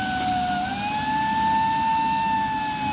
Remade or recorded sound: recorded